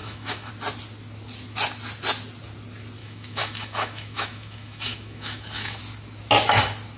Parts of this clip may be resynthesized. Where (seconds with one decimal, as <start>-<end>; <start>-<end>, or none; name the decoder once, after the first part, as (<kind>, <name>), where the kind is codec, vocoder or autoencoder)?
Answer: 0.0-0.5 (autoencoder, DAC-VAE); 3.0-5.8

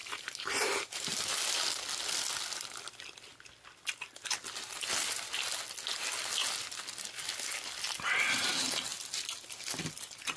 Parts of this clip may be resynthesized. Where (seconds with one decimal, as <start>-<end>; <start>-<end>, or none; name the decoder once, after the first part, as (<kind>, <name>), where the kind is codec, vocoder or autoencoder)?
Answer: 0.0-1.1 (vocoder, BigVGAN v2)

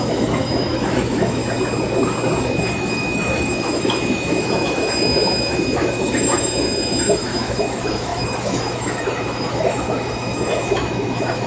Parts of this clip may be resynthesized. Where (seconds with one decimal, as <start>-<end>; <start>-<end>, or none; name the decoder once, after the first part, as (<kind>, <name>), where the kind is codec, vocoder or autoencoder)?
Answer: 0.0-1.4 (autoencoder, DAC-VAE); 2.5-11.5

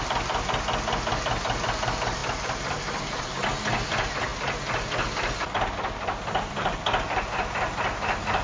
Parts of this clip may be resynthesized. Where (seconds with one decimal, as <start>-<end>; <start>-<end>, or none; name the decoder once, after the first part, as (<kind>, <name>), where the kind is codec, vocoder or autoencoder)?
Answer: none

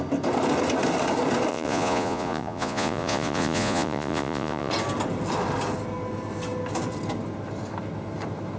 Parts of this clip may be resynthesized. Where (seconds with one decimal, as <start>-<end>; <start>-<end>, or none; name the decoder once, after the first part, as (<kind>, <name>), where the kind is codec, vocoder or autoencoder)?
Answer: 1.5-4.7 (vocoder, Vocos)

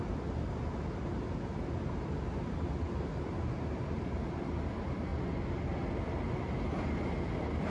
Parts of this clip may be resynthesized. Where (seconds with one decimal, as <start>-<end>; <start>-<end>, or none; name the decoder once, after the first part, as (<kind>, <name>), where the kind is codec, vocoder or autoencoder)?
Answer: none

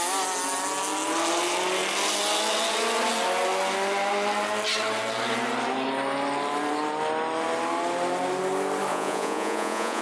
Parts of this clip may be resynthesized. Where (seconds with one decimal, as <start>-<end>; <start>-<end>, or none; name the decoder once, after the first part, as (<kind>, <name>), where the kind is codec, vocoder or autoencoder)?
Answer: 8.9-10.0 (vocoder, Vocos)

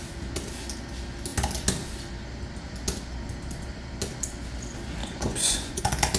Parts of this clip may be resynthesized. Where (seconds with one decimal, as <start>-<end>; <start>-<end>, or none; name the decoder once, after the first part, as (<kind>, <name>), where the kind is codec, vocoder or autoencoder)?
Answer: 5.0-5.8 (vocoder, Vocos)